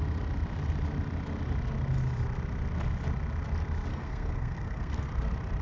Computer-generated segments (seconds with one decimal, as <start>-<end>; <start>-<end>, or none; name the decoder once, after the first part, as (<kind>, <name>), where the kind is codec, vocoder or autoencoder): 3.9-5.1 (codec, SNAC)